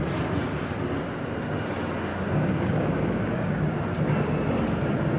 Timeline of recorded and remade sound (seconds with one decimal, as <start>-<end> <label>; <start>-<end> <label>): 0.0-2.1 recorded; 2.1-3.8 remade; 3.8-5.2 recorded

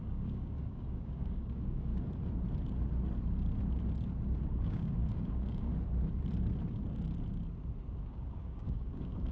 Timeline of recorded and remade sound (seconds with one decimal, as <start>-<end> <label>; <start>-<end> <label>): 0.0-1.9 remade; 1.9-4.4 recorded; 4.4-5.7 remade; 5.7-8.1 recorded; 8.1-9.3 remade

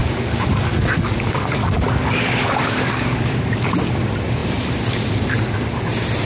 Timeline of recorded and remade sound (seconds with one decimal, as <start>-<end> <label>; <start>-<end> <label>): 0.0-3.6 remade; 3.6-6.2 recorded

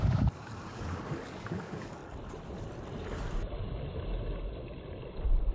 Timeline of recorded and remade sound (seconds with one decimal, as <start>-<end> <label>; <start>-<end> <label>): 0.0-2.0 remade; 2.0-5.5 recorded

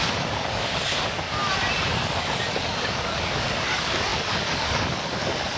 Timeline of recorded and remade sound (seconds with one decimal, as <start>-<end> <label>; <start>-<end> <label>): 0.0-1.4 remade; 1.4-2.2 recorded; 2.2-5.6 remade

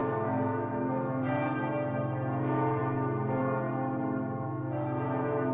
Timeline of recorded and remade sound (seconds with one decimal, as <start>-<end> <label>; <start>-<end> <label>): 0.0-1.6 remade; 1.6-5.5 recorded

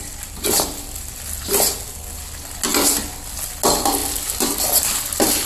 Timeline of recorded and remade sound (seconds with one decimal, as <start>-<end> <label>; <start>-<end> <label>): 0.0-5.5 recorded